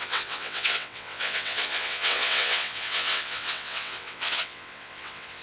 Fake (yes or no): yes